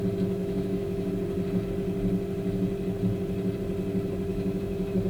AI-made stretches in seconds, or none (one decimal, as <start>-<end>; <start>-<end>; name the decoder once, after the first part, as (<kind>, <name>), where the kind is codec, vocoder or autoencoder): 0.4-1.1 (autoencoder, DAC-VAE); 4.3-5.1